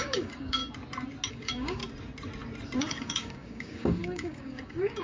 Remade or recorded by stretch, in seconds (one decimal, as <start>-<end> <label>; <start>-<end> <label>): 0.0-0.6 remade; 0.6-1.3 recorded; 1.3-1.8 remade; 1.8-2.8 recorded; 2.8-5.0 remade